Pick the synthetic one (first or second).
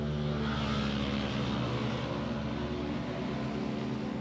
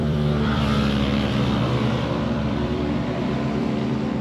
second